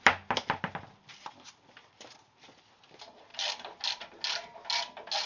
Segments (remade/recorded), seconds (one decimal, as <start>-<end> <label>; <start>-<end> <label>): 0.0-5.3 recorded